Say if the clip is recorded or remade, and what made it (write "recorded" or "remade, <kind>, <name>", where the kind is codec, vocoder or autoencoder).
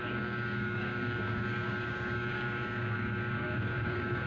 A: remade, codec, DAC